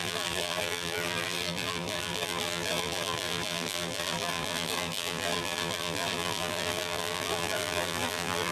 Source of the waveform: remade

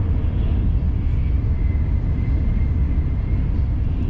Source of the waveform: recorded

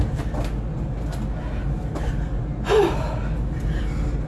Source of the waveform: recorded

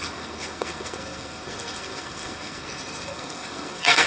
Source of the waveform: remade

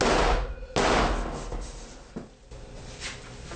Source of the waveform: recorded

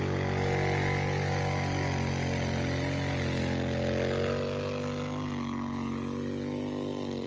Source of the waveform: recorded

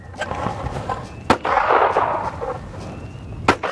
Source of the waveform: recorded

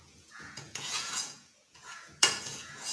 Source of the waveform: remade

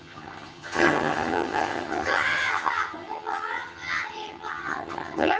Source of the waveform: remade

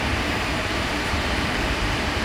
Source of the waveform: remade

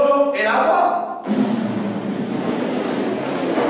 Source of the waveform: recorded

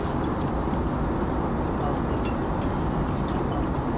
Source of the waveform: recorded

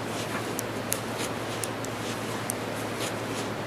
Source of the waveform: recorded